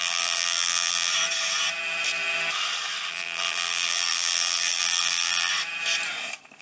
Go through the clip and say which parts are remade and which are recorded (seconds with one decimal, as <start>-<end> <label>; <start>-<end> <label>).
0.0-1.1 remade; 1.1-3.1 recorded; 3.1-5.5 remade; 5.5-6.6 recorded